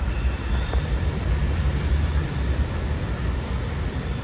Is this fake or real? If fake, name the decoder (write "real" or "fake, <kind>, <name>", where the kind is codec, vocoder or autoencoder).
fake, vocoder, BigVGAN v2